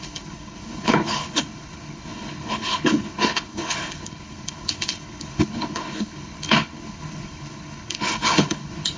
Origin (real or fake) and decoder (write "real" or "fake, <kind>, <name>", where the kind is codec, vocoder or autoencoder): fake, codec, HILCodec